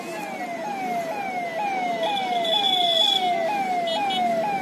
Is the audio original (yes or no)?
yes